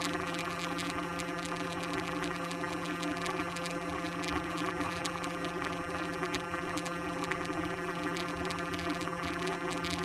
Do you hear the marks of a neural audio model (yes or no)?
yes